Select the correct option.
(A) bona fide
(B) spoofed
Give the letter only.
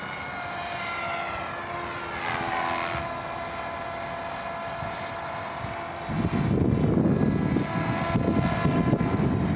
A